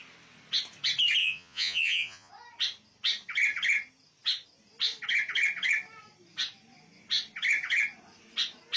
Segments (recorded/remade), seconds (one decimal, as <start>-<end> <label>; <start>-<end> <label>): 0.0-1.2 recorded; 1.2-2.3 remade; 2.3-8.8 recorded